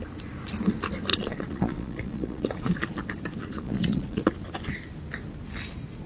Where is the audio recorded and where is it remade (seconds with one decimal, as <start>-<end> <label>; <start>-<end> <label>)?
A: 0.0-1.1 recorded; 1.1-3.0 remade; 3.0-3.4 recorded; 3.4-4.3 remade; 4.3-6.1 recorded